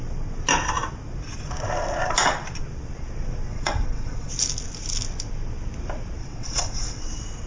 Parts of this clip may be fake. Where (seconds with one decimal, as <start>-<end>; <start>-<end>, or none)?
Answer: 3.5-4.3; 6.2-7.0